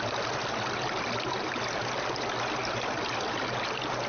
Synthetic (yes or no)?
no